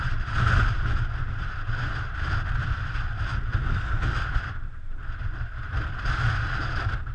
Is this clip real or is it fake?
fake